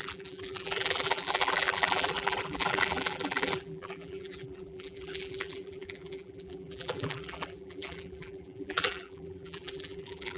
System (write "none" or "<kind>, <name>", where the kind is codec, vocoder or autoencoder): vocoder, BigVGAN v2